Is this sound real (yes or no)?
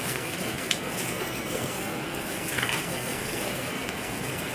no